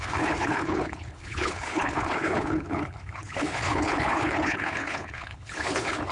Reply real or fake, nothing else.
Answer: fake